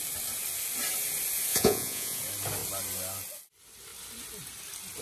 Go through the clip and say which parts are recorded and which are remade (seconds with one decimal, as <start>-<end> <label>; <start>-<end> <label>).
0.0-1.5 recorded; 1.5-2.2 remade; 2.2-5.0 recorded